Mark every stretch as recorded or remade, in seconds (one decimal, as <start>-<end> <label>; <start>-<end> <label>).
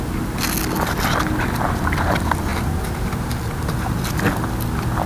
0.0-5.1 recorded